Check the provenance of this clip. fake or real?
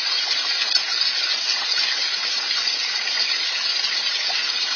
real